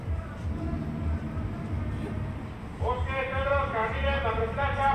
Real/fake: real